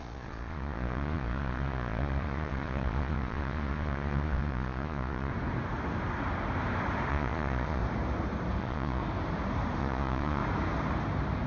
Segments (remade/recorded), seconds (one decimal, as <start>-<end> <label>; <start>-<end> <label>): 0.0-5.3 remade; 5.3-7.1 recorded; 7.1-7.8 remade; 7.8-8.6 recorded; 8.6-9.0 remade; 9.0-9.8 recorded; 9.8-10.4 remade; 10.4-11.5 recorded